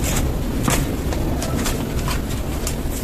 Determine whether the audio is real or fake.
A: fake